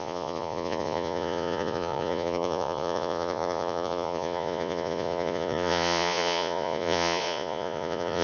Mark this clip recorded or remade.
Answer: remade